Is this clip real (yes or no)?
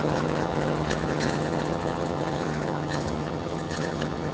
no